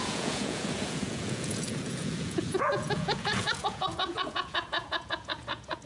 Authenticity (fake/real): fake